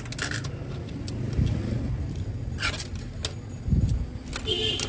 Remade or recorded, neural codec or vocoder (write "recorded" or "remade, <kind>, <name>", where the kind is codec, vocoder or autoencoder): recorded